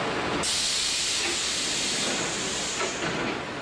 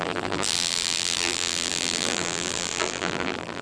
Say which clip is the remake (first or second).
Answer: second